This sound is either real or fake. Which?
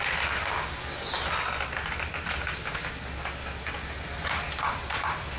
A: real